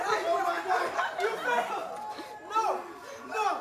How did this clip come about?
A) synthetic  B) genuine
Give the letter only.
B